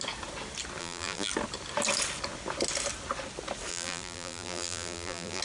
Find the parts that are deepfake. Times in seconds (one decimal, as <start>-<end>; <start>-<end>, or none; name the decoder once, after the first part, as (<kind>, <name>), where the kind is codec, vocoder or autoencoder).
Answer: 0.8-1.3 (vocoder, BigVGAN v2); 3.7-5.4